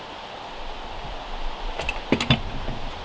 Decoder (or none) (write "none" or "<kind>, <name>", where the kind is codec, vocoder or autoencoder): none